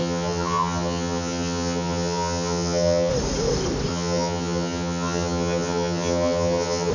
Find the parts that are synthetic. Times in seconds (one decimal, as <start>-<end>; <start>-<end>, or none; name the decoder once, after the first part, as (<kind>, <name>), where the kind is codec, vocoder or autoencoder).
0.0-3.1 (vocoder, HiFi-GAN); 3.9-6.9